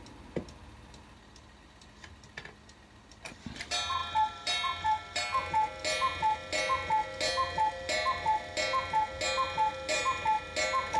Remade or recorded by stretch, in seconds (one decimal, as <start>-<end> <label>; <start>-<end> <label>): 0.0-11.0 recorded